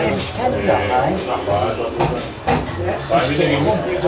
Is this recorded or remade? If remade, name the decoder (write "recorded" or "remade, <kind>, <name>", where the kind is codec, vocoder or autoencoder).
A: recorded